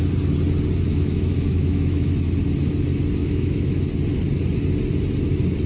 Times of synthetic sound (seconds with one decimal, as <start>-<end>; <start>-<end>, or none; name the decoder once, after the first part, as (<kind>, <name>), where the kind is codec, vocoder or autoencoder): 0.9-2.1 (autoencoder, DAC-VAE); 3.2-3.8